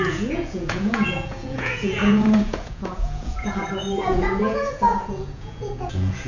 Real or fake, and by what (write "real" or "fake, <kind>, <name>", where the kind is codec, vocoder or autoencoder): fake, vocoder, Vocos